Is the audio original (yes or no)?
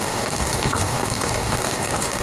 no